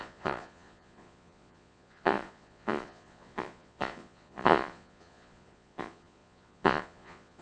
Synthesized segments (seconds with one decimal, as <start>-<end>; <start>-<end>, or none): 0.0-7.4

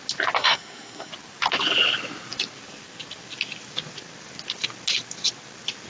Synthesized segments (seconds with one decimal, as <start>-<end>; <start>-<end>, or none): 0.4-1.1

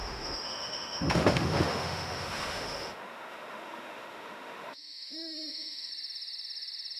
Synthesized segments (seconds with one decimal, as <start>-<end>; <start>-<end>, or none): 0.0-5.9

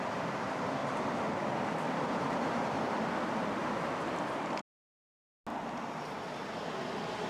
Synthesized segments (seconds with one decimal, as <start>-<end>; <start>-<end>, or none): none

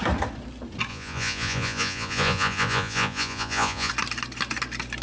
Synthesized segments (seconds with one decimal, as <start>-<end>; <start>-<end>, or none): 0.9-3.9